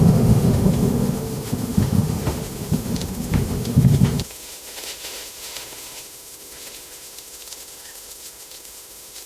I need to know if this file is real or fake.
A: fake